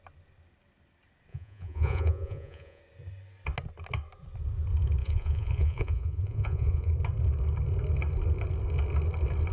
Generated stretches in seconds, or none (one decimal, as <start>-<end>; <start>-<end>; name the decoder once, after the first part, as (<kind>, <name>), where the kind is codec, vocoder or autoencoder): 1.3-2.8 (vocoder, Vocos); 5.0-6.9